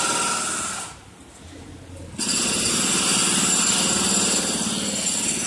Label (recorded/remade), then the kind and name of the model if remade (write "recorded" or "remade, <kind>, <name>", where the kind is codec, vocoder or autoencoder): recorded